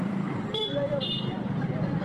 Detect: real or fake fake